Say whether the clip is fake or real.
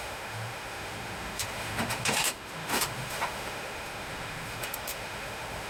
fake